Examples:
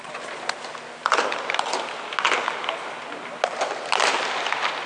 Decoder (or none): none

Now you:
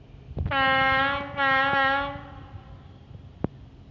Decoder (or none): none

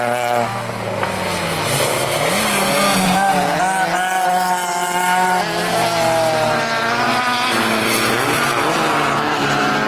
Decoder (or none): none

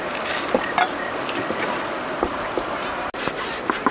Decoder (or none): none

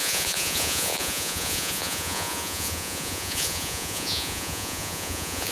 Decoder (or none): vocoder, Vocos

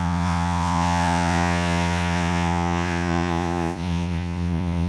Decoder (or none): vocoder, Vocos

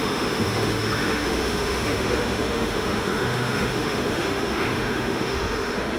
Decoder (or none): autoencoder, DAC-VAE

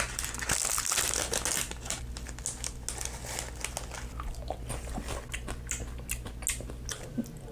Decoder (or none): none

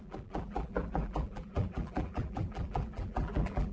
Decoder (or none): vocoder, BigVGAN v2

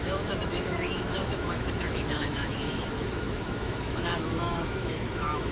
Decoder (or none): autoencoder, DAC-VAE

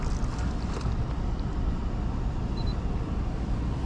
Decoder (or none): none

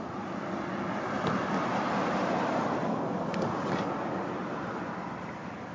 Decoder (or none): none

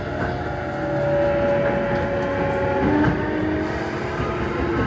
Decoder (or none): none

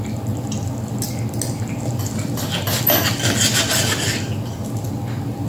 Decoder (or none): none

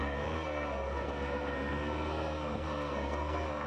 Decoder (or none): codec, SNAC